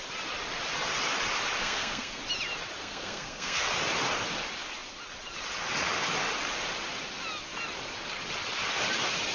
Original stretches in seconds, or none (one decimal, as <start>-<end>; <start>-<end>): 0.0-1.6; 2.2-2.8; 3.6-9.3